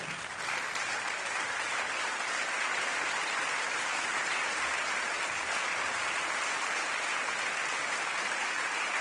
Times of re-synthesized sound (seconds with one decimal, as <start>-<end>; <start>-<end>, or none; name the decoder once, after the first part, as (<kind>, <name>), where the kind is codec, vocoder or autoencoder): none